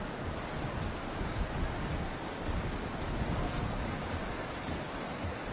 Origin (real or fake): real